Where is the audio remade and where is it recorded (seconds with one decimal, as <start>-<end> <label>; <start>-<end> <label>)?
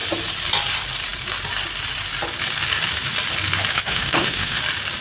0.0-3.7 recorded; 3.7-4.6 remade; 4.6-5.0 recorded